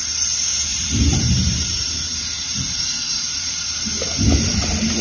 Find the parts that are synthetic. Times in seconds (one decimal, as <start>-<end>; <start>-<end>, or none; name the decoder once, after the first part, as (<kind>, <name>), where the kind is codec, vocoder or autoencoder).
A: 0.7-3.7 (vocoder, BigVGAN v2)